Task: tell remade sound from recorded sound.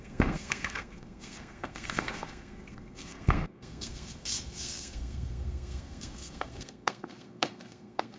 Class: remade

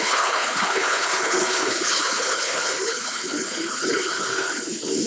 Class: remade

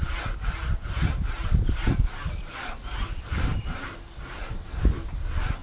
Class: recorded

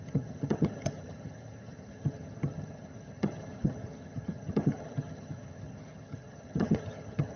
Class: remade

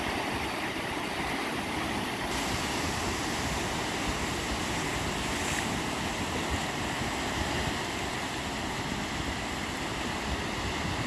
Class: recorded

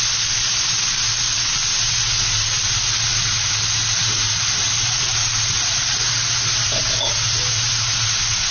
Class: recorded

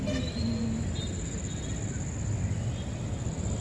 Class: recorded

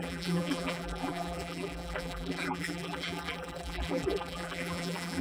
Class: remade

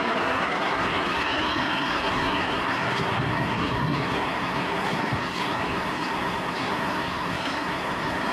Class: remade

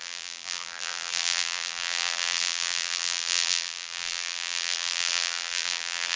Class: remade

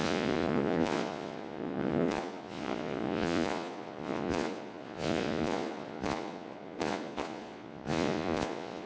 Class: remade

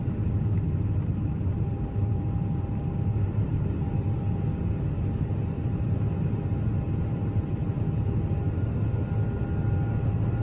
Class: recorded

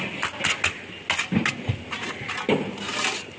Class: recorded